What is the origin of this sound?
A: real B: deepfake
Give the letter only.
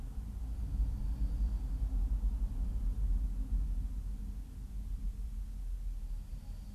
A